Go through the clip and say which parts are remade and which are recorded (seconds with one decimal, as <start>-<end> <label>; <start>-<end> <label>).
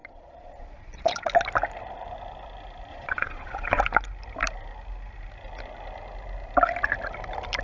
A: 0.0-1.3 remade; 1.3-2.9 recorded; 2.9-3.8 remade; 3.8-7.6 recorded